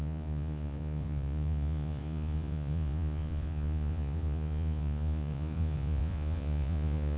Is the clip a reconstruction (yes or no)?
yes